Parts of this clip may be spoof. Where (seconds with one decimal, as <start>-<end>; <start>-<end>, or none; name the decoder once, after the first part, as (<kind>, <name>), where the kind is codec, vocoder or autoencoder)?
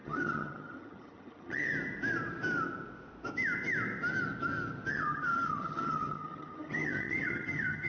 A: 0.0-1.7 (vocoder, HiFi-GAN); 4.9-7.9